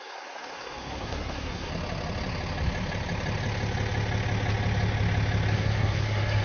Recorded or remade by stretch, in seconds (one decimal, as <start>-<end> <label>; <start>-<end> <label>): 0.0-1.7 remade; 1.7-5.5 recorded; 5.5-6.4 remade